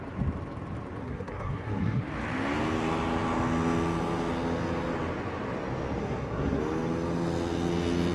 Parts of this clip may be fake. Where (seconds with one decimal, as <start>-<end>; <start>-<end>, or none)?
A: 1.0-2.0; 6.0-6.6